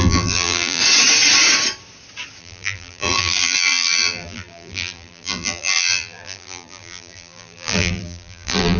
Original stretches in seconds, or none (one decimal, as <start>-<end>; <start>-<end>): 0.8-2.4